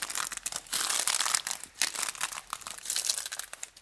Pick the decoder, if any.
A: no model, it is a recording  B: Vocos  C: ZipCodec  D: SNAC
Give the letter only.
A